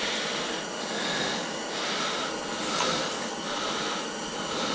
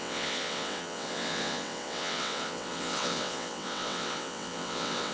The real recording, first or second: first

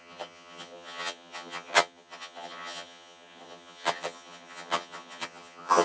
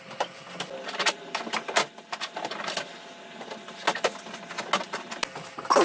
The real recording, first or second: second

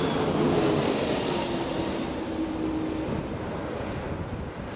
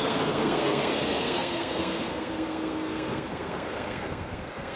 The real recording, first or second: first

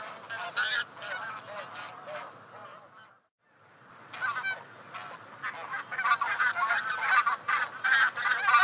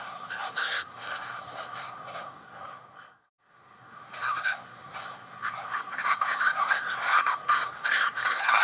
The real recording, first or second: first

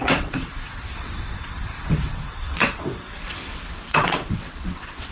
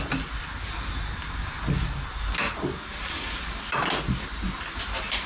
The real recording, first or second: second